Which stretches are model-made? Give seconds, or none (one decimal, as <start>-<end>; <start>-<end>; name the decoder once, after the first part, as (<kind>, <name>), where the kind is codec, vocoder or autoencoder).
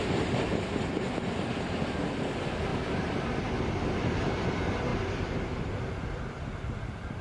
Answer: 2.7-4.5 (vocoder, BigVGAN v2); 4.9-6.8